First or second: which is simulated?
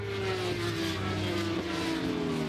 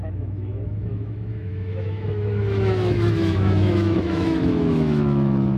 second